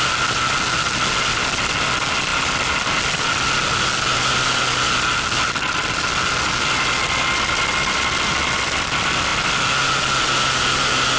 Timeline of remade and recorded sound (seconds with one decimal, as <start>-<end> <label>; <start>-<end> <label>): 0.0-11.2 recorded